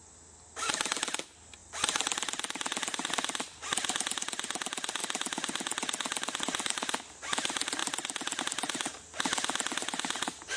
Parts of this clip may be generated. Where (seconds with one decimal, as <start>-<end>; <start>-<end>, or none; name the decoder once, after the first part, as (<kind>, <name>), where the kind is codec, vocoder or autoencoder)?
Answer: none